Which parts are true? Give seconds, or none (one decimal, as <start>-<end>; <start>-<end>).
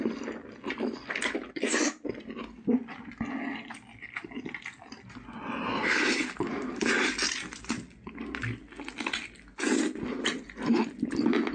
0.0-11.5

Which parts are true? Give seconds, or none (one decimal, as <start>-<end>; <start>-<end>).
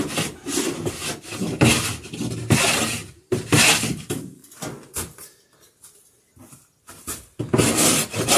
0.0-8.4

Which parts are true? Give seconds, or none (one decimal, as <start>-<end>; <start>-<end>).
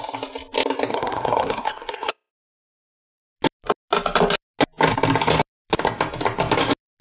0.0-0.9; 2.3-7.0